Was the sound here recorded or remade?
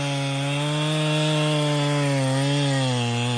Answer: recorded